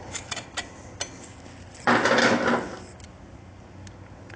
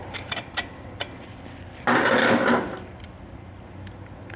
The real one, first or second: first